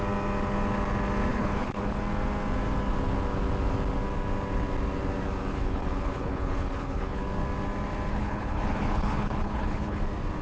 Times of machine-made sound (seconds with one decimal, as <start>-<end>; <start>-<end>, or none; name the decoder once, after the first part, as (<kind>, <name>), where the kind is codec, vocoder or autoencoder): 1.3-2.0 (codec, HILCodec); 5.5-7.2; 8.1-10.0